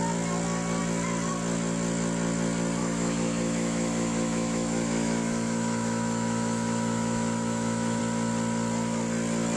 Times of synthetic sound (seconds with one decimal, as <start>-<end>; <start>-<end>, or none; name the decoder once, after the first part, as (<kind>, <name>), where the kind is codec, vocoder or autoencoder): 2.8-8.0 (autoencoder, DAC-VAE)